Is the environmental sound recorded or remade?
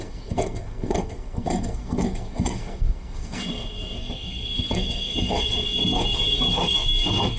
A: remade